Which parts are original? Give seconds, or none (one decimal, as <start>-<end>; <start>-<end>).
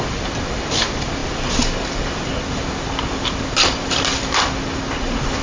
0.0-5.4